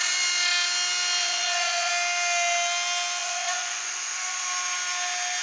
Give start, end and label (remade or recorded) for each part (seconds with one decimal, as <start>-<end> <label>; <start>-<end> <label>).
0.0-1.2 recorded; 1.2-1.9 remade; 1.9-3.2 recorded; 3.2-4.4 remade; 4.4-5.4 recorded